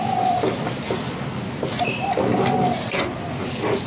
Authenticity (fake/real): real